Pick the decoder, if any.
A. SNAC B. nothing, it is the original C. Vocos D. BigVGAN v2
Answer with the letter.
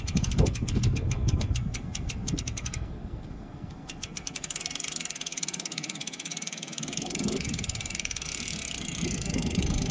A